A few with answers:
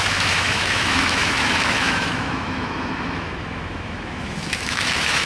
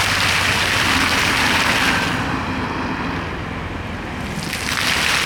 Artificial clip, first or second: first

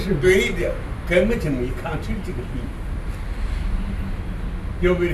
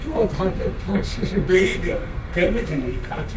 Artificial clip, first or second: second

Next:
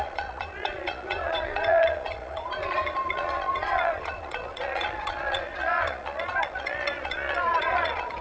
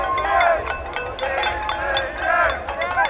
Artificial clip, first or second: first